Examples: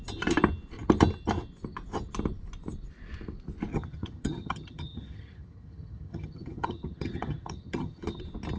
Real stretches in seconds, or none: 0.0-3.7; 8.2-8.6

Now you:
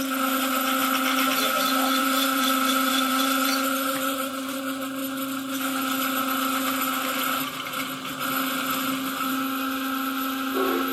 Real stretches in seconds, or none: 0.0-2.0; 4.6-10.9

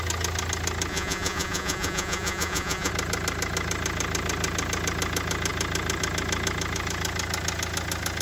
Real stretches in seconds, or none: 0.0-0.9; 2.9-8.2